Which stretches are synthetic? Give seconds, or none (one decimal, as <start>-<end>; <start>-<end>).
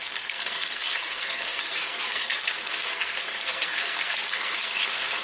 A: 0.0-5.2